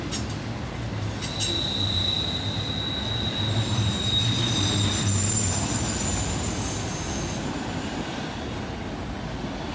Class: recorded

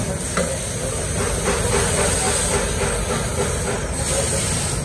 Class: recorded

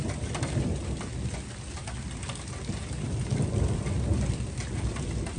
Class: recorded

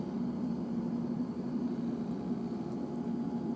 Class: remade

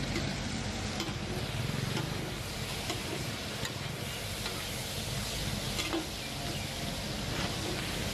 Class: recorded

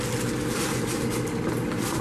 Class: recorded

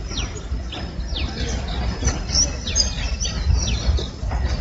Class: recorded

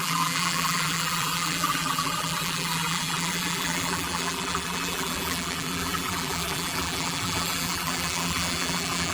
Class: remade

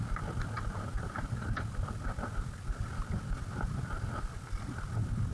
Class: recorded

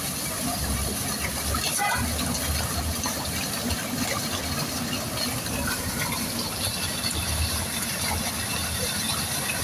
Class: recorded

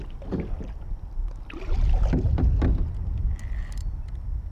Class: recorded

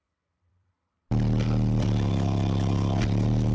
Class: remade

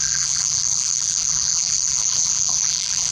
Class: remade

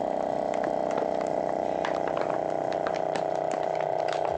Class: remade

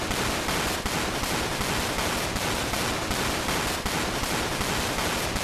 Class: recorded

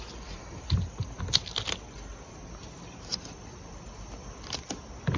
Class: recorded